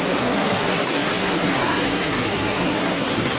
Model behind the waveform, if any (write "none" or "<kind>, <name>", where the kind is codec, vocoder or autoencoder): codec, SNAC